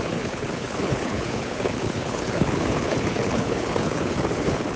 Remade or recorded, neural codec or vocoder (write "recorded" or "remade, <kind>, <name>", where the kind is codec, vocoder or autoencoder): remade, codec, HILCodec